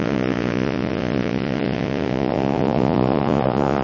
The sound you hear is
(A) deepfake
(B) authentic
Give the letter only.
A